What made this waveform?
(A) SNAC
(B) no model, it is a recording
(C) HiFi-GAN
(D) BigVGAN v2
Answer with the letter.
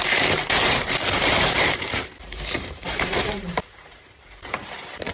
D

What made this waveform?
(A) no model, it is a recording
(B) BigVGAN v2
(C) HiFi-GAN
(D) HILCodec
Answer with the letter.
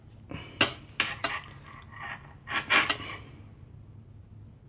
A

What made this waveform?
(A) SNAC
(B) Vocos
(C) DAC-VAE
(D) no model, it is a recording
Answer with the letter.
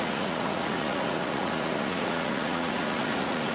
B